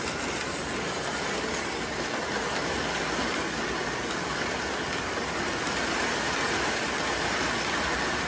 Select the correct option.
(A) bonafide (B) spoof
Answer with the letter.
A